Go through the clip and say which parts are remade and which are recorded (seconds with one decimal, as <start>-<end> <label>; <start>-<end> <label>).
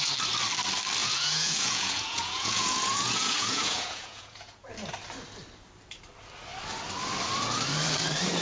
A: 0.0-1.0 recorded; 1.0-4.7 remade; 4.7-8.4 recorded